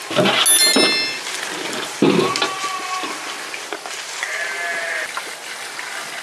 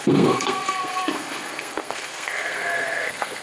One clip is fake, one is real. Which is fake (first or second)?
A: second